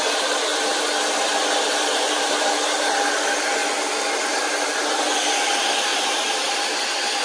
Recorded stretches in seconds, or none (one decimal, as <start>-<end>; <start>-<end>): 0.0-7.2